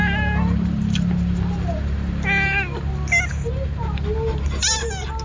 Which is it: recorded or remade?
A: recorded